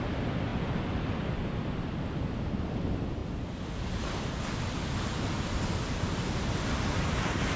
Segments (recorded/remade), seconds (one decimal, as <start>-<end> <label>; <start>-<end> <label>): 0.0-7.6 recorded